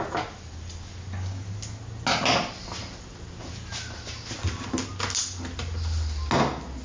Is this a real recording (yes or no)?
yes